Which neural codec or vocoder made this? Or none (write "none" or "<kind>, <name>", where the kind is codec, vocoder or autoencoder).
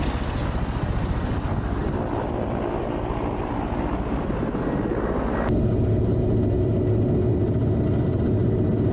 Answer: none